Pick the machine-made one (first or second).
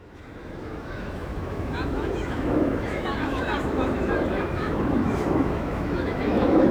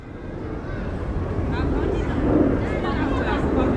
first